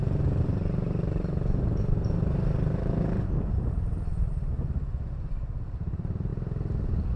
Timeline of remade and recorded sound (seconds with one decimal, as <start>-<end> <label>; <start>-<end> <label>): 0.0-6.3 remade; 6.3-7.2 recorded